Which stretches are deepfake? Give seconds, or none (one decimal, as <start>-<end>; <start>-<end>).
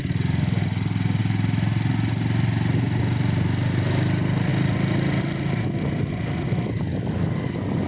none